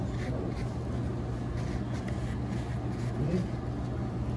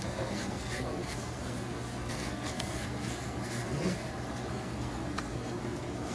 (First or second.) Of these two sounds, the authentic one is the first